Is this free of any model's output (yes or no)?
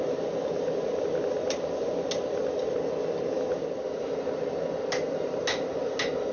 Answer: yes